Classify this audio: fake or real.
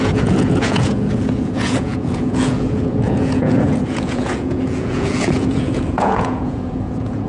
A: fake